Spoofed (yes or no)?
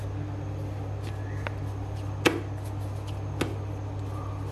no